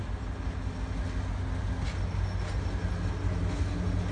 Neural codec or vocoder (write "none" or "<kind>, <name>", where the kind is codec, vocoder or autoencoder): none